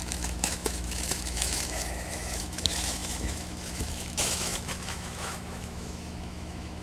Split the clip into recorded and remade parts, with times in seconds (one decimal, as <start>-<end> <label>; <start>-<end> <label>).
0.0-6.8 remade